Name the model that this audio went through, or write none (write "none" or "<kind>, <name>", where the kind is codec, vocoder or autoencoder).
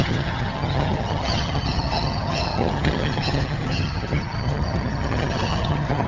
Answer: vocoder, HiFi-GAN